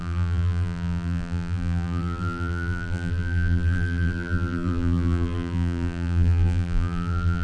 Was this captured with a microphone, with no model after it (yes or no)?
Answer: no